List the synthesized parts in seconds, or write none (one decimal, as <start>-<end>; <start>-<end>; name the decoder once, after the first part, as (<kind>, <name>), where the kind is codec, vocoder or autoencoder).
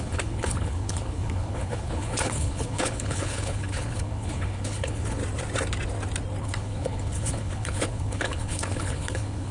0.0-5.2 (codec, HILCodec); 6.4-9.5